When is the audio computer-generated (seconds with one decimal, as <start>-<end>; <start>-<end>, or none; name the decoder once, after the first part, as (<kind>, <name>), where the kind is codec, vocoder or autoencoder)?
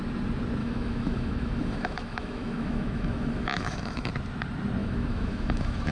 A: 0.6-4.1 (autoencoder, DAC-VAE); 4.8-5.9